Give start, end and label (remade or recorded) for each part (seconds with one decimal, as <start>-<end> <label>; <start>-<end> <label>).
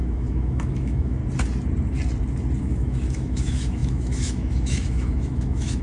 0.0-1.2 remade; 1.2-2.6 recorded; 2.6-5.8 remade